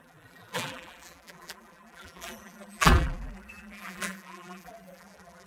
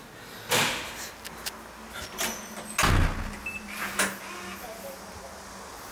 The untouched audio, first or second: second